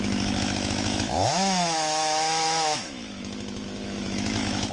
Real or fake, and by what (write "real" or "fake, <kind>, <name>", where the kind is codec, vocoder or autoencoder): fake, autoencoder, DAC-VAE